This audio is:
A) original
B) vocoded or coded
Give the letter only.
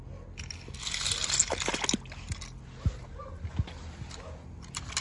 A